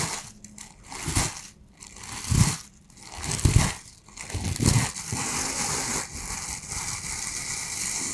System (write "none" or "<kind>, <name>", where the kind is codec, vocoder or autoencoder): none